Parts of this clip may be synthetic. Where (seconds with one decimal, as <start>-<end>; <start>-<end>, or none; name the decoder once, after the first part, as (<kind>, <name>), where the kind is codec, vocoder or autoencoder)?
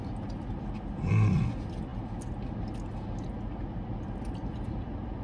none